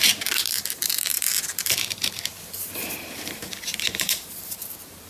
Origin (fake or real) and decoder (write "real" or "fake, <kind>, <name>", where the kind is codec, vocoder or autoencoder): fake, vocoder, BigVGAN v2